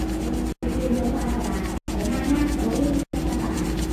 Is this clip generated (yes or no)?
no